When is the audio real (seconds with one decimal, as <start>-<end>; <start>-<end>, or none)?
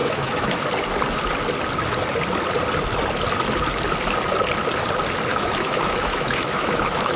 0.6-5.3